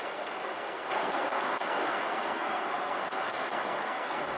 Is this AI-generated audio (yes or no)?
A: yes